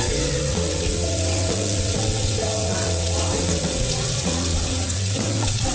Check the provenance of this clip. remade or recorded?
remade